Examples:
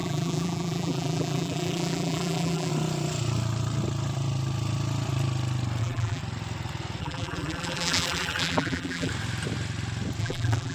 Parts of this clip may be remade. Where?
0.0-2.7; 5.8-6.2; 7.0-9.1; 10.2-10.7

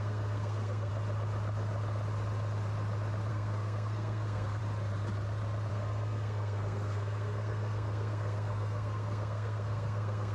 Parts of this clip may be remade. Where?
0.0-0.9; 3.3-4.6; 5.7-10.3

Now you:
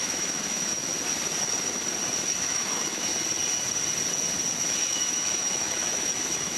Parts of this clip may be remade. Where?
0.0-0.9; 2.4-3.1; 4.5-6.6